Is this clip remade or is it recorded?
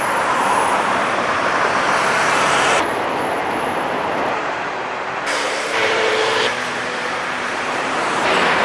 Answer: remade